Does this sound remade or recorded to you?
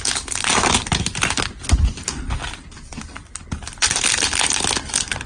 recorded